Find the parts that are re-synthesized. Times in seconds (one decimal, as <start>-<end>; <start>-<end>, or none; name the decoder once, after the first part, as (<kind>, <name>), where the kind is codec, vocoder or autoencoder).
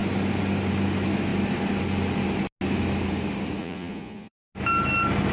3.6-4.3 (vocoder, Vocos)